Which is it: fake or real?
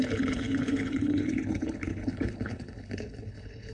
fake